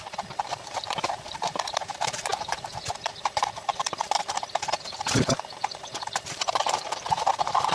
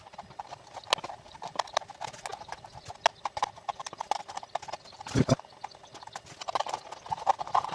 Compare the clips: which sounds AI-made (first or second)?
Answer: first